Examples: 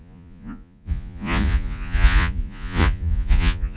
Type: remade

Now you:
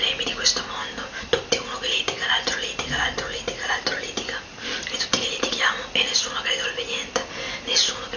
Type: recorded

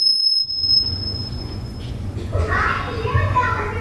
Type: remade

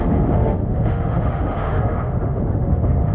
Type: remade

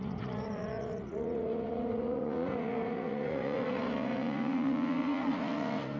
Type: remade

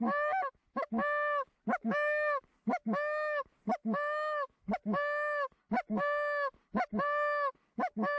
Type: recorded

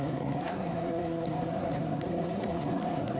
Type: remade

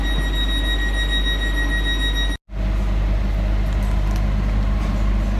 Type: recorded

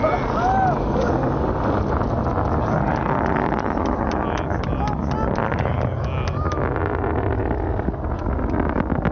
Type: recorded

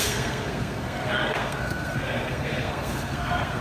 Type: remade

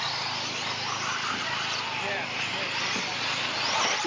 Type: recorded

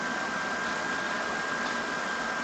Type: recorded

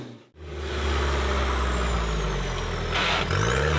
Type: recorded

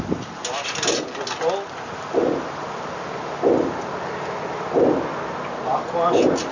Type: recorded